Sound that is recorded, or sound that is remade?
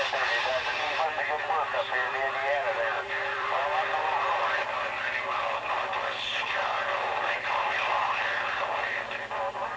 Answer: remade